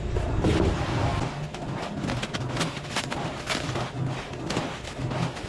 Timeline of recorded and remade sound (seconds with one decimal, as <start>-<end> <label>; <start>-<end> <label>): 0.0-5.5 recorded